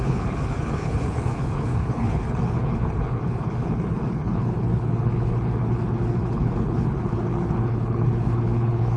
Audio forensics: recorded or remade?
remade